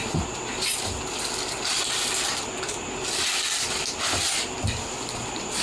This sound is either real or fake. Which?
real